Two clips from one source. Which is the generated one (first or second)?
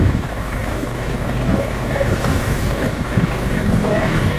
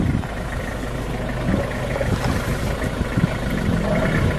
first